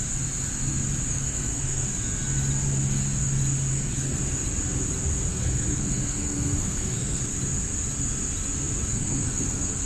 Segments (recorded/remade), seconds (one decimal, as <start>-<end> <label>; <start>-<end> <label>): 0.0-1.1 recorded; 1.1-1.9 remade; 1.9-3.7 recorded; 3.7-4.2 remade; 4.2-5.3 recorded; 5.3-7.2 remade; 7.2-8.9 recorded; 8.9-9.9 remade